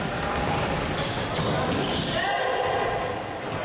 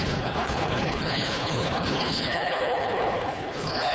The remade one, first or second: second